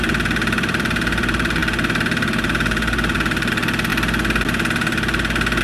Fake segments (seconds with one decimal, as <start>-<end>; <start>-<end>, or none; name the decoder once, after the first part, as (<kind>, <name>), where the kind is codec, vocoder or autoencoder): 0.0-3.9 (vocoder, BigVGAN v2)